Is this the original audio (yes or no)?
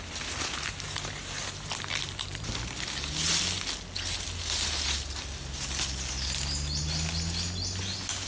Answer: yes